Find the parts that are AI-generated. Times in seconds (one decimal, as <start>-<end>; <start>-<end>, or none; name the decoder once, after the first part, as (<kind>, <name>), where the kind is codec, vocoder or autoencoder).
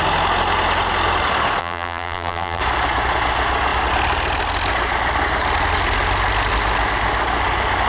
1.6-2.6 (vocoder, BigVGAN v2)